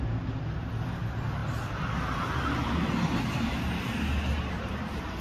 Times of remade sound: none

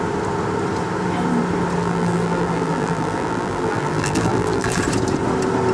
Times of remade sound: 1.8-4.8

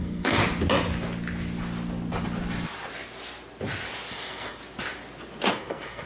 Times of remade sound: 0.0-0.4; 4.1-4.6; 5.5-6.1

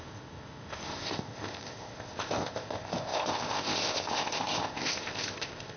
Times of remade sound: 0.0-5.8